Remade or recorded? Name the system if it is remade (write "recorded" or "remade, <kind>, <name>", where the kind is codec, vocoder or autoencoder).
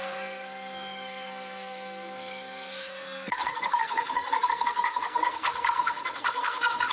remade, codec, SNAC